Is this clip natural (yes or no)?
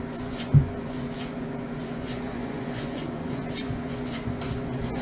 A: no